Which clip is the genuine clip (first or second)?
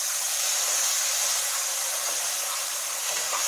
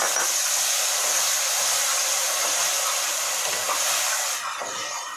second